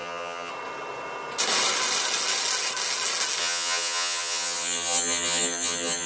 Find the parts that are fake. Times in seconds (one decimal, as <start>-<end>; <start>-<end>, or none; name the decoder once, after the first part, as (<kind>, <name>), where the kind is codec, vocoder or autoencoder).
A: 0.0-0.5 (vocoder, HiFi-GAN); 3.4-6.1